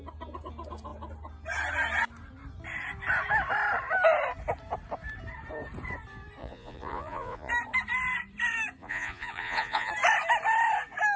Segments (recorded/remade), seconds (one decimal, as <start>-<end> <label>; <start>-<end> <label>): 0.0-6.4 recorded; 6.4-7.5 remade; 7.5-8.8 recorded; 8.8-9.9 remade; 9.9-11.2 recorded